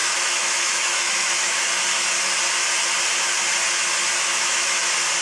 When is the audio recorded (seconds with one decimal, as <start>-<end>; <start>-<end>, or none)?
1.6-4.3; 4.8-5.2